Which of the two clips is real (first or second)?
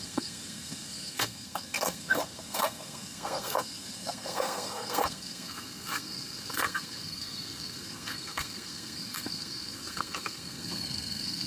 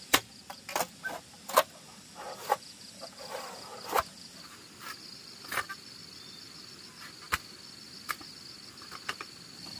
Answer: second